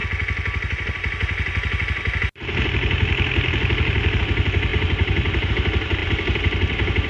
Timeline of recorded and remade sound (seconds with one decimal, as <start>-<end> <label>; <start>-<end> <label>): 0.0-7.1 recorded